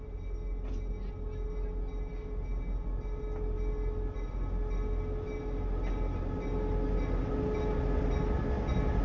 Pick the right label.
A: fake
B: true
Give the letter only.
B